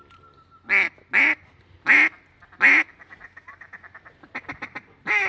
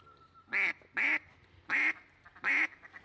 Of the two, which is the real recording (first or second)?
first